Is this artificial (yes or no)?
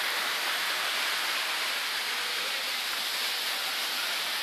no